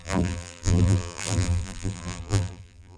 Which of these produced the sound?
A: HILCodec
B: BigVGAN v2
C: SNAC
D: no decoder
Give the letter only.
B